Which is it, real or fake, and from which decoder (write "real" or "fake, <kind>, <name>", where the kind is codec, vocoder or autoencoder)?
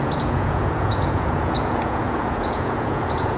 fake, vocoder, Vocos